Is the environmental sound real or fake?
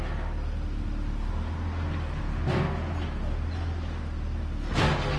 real